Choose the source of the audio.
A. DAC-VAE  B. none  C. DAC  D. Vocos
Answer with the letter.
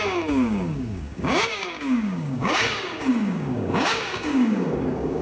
C